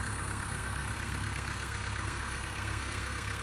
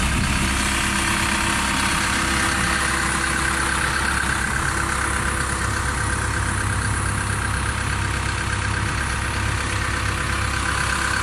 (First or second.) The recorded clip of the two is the second